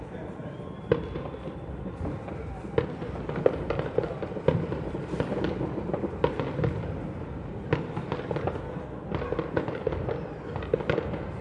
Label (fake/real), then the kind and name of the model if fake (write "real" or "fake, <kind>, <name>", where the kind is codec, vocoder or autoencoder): real